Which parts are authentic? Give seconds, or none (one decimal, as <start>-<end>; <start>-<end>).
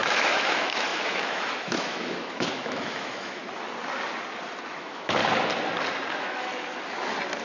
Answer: 3.4-4.7; 5.2-6.1; 6.5-7.4